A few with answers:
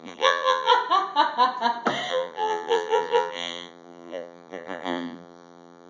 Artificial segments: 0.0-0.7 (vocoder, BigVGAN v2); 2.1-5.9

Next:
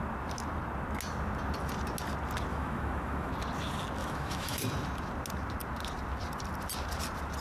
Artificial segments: 2.5-3.3 (autoencoder, DAC-VAE); 4.0-4.6